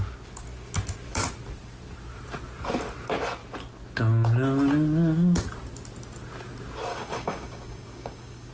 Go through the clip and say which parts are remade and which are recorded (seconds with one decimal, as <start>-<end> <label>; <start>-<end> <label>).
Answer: 0.0-6.9 recorded; 6.9-8.5 remade